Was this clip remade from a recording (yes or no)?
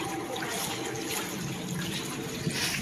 no